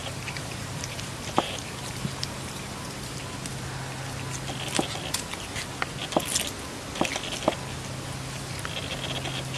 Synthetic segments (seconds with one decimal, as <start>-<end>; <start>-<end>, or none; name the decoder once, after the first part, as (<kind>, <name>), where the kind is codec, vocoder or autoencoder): 0.0-3.2 (vocoder, BigVGAN v2)

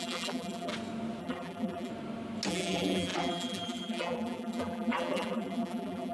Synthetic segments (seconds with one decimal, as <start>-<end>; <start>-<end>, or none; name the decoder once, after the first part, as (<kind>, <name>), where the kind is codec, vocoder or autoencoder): 0.0-0.7 (vocoder, BigVGAN v2); 1.2-1.9; 2.5-6.1

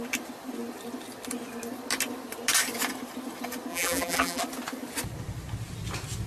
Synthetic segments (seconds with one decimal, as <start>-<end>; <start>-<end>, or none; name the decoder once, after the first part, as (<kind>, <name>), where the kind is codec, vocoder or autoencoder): 3.7-4.4 (vocoder, BigVGAN v2)

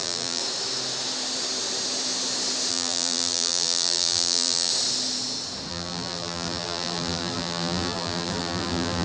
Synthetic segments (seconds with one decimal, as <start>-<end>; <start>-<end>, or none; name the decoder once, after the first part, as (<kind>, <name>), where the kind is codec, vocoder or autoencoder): 0.0-0.4 (vocoder, BigVGAN v2); 2.7-4.7; 5.7-9.0

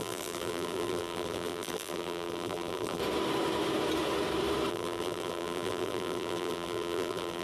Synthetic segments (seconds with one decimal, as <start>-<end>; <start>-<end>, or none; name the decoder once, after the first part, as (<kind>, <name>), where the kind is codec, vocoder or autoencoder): 0.0-3.0 (vocoder, BigVGAN v2); 4.7-7.4

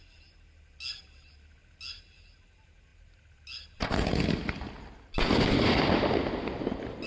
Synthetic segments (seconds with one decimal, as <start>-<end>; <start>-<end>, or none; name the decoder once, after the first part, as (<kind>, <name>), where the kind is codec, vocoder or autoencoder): none

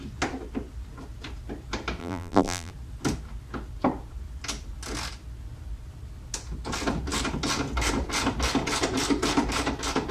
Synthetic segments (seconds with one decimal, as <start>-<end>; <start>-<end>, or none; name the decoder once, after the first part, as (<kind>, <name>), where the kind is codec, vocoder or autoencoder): 2.0-2.7 (vocoder, BigVGAN v2)